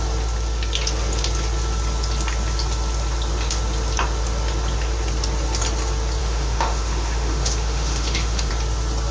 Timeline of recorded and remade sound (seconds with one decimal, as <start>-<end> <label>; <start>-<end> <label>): 0.0-6.2 recorded; 6.2-8.5 remade; 8.5-9.1 recorded